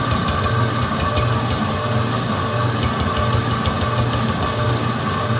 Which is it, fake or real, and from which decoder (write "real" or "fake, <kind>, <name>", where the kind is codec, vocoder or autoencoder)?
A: real